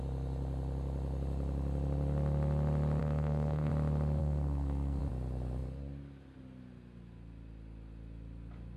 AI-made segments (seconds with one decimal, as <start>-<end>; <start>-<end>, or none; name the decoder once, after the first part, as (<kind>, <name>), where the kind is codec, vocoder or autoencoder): 3.0-3.7 (codec, SNAC); 4.2-5.0